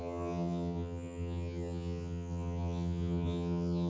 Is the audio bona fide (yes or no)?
no